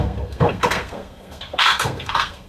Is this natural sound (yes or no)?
no